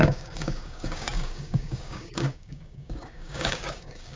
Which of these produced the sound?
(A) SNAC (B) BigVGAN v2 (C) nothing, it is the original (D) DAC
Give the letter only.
D